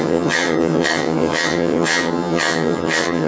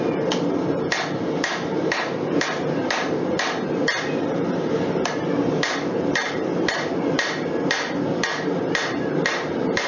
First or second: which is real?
second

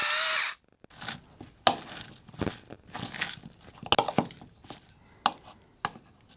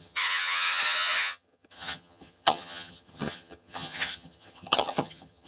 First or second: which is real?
first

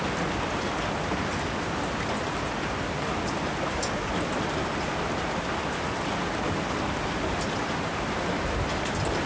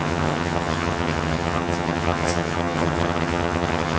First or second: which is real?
first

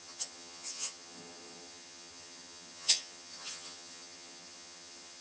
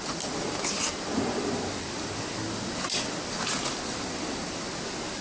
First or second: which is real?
second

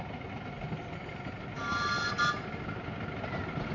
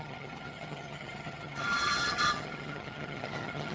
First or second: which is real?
first